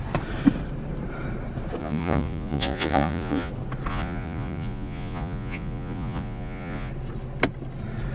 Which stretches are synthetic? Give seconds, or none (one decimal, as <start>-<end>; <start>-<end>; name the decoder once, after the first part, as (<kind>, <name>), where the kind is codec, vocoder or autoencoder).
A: 1.8-3.5 (vocoder, Vocos); 3.9-6.9